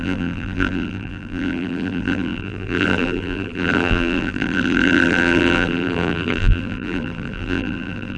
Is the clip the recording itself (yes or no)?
no